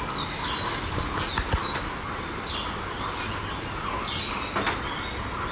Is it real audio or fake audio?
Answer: real